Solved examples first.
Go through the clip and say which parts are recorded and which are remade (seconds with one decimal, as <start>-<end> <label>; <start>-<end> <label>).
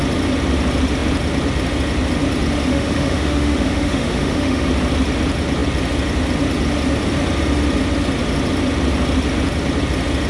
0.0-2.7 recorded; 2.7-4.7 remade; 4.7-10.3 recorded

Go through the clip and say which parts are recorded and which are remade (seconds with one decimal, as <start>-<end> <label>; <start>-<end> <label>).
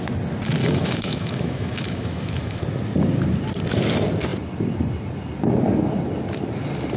0.0-0.6 recorded; 0.6-2.6 remade; 2.6-7.0 recorded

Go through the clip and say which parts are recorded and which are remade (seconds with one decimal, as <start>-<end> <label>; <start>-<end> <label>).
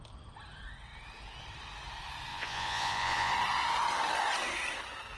0.0-2.3 recorded; 2.3-3.3 remade; 3.3-5.2 recorded